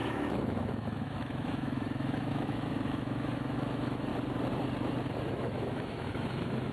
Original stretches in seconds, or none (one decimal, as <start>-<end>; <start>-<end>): 4.1-5.3